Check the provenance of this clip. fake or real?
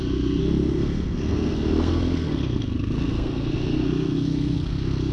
fake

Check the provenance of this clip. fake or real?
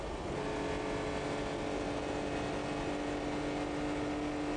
real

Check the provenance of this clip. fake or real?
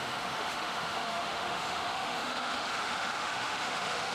fake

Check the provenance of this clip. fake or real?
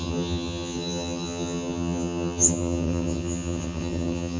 fake